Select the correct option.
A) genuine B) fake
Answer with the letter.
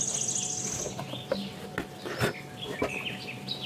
A